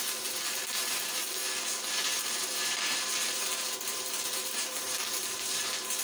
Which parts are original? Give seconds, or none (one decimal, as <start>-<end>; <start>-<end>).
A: 1.4-1.9